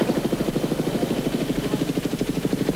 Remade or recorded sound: recorded